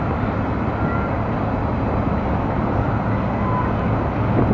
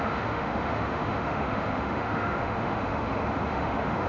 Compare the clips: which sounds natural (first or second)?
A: first